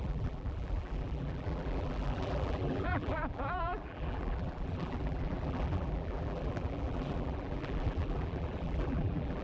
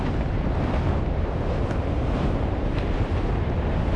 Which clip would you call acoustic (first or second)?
second